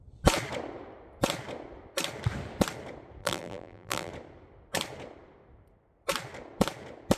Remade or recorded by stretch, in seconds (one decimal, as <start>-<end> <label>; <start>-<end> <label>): 0.0-3.2 recorded; 3.2-4.1 remade; 4.1-7.2 recorded

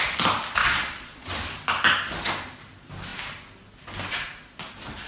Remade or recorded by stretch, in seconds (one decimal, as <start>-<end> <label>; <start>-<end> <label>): 0.0-0.6 recorded; 0.6-1.3 remade; 1.3-5.1 recorded

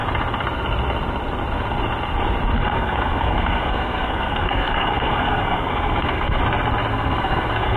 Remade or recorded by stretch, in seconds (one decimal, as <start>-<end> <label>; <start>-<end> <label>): 0.0-2.6 recorded; 2.6-6.4 remade; 6.4-6.9 recorded; 6.9-7.8 remade